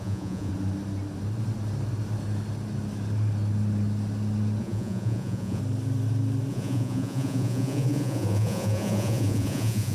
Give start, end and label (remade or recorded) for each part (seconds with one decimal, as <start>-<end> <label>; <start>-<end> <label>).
0.0-0.5 remade; 0.5-4.6 recorded; 4.6-5.6 remade; 5.6-6.5 recorded; 6.5-9.9 remade